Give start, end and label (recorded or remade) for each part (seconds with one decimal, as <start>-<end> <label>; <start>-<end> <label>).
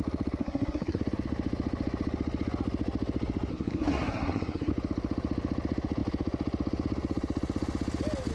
0.0-0.4 recorded; 0.4-1.0 remade; 1.0-3.5 recorded; 3.5-4.7 remade; 4.7-8.3 recorded